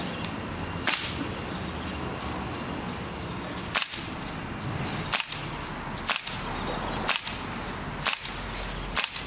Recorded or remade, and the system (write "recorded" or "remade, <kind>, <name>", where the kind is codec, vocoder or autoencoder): recorded